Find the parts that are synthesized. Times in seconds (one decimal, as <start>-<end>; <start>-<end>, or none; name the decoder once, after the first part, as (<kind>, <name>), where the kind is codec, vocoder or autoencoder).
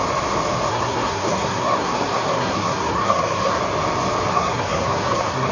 0.7-3.6 (codec, SNAC); 4.3-5.5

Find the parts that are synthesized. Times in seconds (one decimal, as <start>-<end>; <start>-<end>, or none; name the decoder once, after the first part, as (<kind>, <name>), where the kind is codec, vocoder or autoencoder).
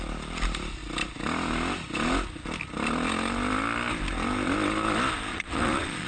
5.3-6.1 (vocoder, Vocos)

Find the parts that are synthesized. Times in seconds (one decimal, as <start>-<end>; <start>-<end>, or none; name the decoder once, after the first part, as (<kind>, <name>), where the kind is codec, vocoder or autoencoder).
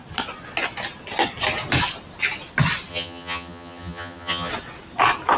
2.9-4.5 (vocoder, HiFi-GAN)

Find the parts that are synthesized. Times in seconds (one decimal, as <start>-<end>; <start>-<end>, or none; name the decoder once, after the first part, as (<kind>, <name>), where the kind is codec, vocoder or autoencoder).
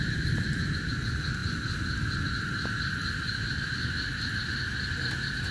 none